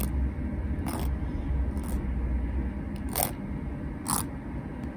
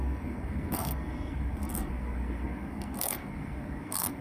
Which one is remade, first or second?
second